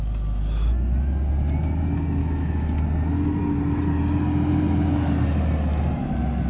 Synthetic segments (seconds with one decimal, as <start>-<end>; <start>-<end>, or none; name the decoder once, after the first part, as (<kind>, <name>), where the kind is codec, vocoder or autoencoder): 2.2-2.8 (autoencoder, DAC-VAE)